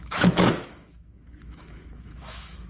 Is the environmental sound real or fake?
fake